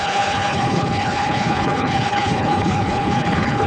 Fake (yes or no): yes